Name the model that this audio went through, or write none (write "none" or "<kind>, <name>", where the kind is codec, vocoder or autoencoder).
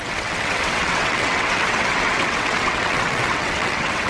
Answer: vocoder, WaveNeXt